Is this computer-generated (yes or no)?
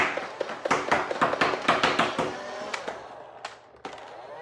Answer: no